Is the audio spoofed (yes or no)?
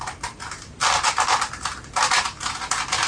no